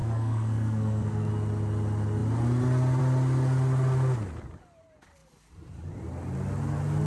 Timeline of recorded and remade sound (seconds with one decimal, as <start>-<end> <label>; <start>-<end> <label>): 0.0-1.3 remade; 1.3-7.1 recorded